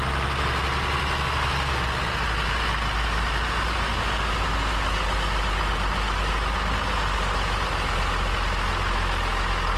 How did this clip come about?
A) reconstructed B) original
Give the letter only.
B